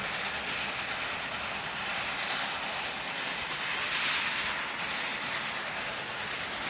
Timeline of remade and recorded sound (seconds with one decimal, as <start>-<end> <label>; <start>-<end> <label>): 0.0-6.7 recorded